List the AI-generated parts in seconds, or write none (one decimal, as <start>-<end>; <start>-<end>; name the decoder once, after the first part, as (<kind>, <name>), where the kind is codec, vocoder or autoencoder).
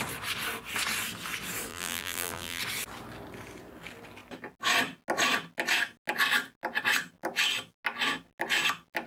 1.7-2.6 (vocoder, BigVGAN v2)